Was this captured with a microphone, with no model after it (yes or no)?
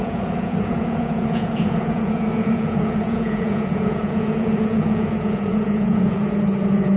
no